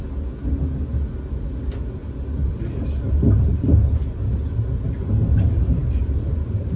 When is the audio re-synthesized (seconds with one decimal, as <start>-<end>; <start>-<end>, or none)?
2.0-2.6; 5.8-6.8